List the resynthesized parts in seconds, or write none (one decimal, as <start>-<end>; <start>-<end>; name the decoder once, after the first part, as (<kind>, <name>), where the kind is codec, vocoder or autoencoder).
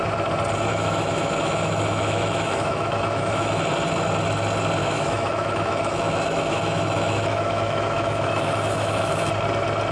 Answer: 0.7-3.6 (autoencoder, DAC-VAE); 4.8-9.3